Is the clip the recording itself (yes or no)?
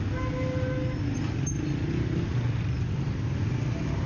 yes